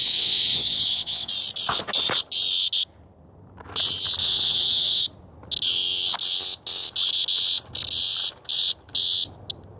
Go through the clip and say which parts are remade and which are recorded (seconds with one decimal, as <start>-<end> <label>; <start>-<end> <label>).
0.0-1.3 remade; 1.3-4.2 recorded; 4.2-5.0 remade; 5.0-9.8 recorded